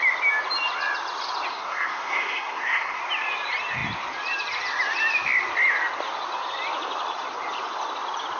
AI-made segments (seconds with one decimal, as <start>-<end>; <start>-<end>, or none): 1.5-3.0